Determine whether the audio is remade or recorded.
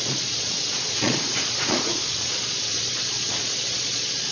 remade